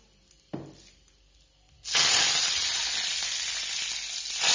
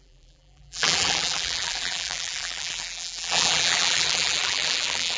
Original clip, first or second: first